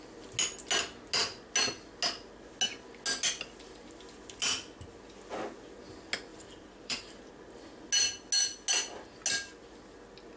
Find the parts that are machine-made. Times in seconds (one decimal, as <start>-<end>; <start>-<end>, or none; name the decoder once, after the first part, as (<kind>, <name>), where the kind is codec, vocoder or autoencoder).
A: 6.3-7.3 (vocoder, BigVGAN v2)